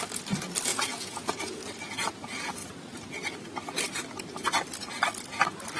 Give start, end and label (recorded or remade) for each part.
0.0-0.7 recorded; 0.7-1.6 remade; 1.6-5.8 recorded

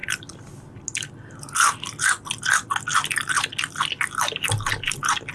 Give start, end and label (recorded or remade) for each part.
0.0-5.3 recorded

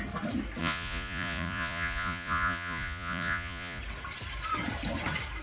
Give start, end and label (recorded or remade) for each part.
0.0-0.6 recorded; 0.6-3.8 remade; 3.8-5.4 recorded

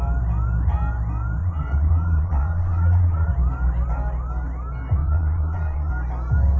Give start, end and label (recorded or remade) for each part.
0.0-1.4 recorded; 1.4-3.3 remade; 3.3-5.0 recorded; 5.0-5.9 remade; 5.9-6.6 recorded